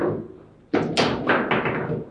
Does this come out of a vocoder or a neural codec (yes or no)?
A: no